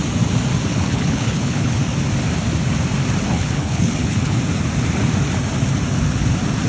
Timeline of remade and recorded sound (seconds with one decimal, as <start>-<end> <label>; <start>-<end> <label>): 0.0-0.7 recorded; 0.7-1.8 remade; 1.8-3.3 recorded; 3.3-4.4 remade; 4.4-6.7 recorded

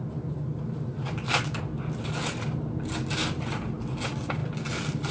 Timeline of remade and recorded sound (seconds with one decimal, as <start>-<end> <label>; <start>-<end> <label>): 0.0-5.1 recorded